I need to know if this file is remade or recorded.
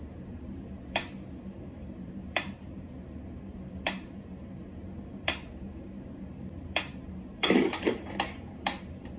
remade